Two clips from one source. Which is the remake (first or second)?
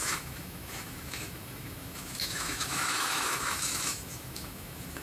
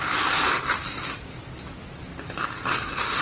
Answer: first